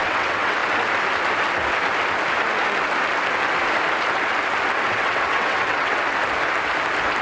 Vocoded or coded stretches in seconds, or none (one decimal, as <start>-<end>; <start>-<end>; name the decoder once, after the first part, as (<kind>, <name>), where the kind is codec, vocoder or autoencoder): 0.0-0.6 (vocoder, WaveNeXt); 4.9-6.0